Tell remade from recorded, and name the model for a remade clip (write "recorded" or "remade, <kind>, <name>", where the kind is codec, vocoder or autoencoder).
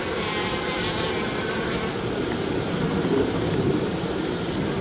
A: remade, vocoder, BigVGAN v2